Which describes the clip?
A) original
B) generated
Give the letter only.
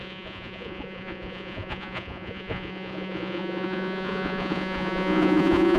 B